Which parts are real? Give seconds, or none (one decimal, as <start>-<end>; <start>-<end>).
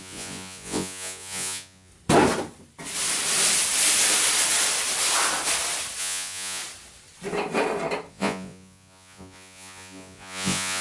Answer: 1.9-6.0; 6.6-8.1